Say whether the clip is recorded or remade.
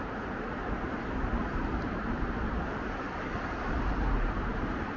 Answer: remade